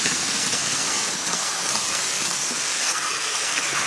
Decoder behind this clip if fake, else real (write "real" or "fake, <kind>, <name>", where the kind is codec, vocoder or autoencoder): fake, codec, SNAC